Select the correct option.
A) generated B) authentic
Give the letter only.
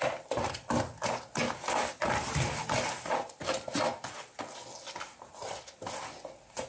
B